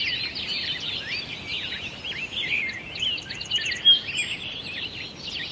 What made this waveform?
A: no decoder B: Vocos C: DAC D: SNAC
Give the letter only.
A